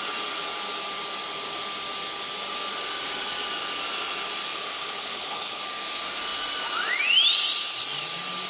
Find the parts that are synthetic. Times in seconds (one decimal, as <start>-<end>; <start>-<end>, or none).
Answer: 4.5-5.6